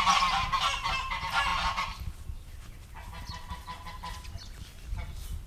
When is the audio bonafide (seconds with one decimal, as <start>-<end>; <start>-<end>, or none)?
0.0-5.5